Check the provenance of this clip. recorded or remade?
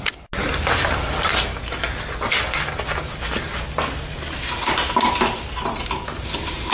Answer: recorded